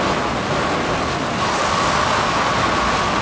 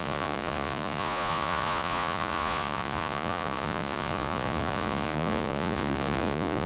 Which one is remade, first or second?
second